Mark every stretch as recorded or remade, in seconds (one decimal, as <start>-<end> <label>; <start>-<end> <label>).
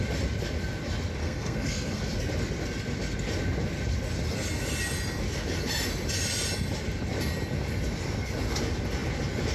0.0-1.2 recorded; 1.2-2.0 remade; 2.0-9.5 recorded